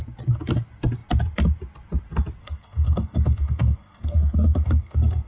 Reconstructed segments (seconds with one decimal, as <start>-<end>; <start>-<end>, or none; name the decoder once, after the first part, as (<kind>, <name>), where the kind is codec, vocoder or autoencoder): 2.4-5.3 (codec, SNAC)